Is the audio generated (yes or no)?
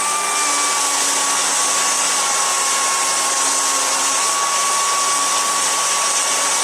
no